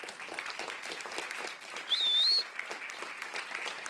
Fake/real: real